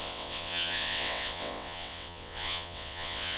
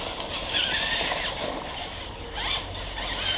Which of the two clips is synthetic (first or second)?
first